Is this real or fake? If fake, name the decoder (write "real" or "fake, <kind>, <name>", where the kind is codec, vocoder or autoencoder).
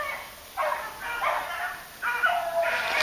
real